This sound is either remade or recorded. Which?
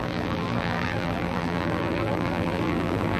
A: remade